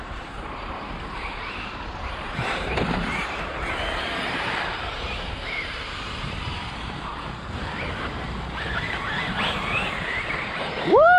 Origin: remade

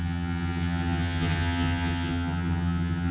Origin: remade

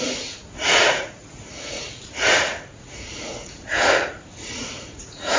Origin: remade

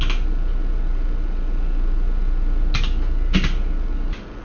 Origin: recorded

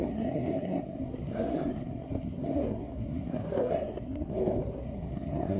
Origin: remade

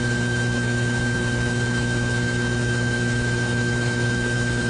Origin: remade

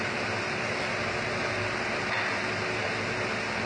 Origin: recorded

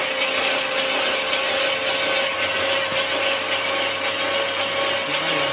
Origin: recorded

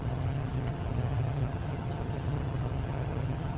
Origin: remade